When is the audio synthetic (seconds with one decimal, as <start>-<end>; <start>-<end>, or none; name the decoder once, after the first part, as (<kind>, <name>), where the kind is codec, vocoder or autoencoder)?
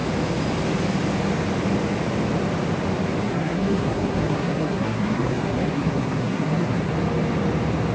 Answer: 3.2-6.9 (codec, SNAC)